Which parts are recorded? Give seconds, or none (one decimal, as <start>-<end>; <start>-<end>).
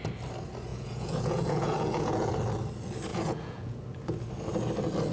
0.0-0.7; 2.3-3.1; 3.8-5.1